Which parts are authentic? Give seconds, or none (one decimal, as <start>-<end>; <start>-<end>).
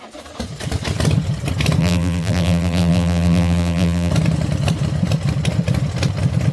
0.0-1.8; 4.1-6.5